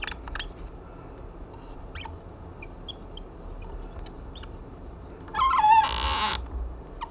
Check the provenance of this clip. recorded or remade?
recorded